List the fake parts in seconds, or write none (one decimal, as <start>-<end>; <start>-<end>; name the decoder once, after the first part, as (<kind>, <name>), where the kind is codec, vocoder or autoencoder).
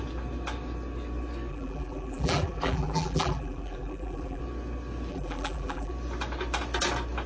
1.5-4.4 (vocoder, BigVGAN v2); 5.1-5.9